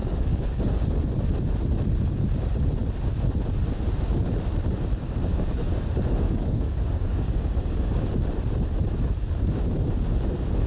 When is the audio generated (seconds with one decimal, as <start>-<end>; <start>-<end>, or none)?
0.0-0.6; 5.3-8.1